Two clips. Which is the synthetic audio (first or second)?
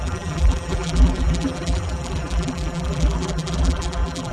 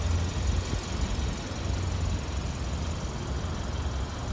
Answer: first